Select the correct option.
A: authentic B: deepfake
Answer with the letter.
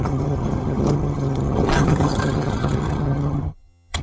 B